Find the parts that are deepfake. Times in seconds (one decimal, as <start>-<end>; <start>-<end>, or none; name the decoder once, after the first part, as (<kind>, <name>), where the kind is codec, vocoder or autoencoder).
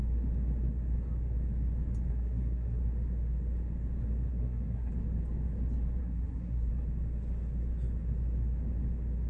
2.1-2.8 (codec, SNAC); 4.3-4.9; 6.0-6.7